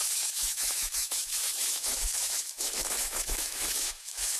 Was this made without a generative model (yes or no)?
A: no